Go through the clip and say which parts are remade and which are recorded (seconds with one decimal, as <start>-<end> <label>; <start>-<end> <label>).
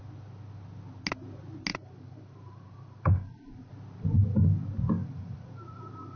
0.0-1.7 recorded; 1.7-3.7 remade; 3.7-5.0 recorded; 5.0-6.2 remade